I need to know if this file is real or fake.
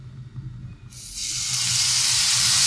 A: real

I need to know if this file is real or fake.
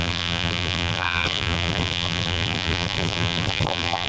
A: fake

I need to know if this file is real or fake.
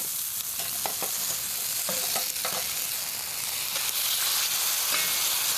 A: real